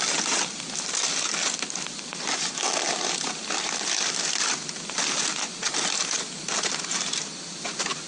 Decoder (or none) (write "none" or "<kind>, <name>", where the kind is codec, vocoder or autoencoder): none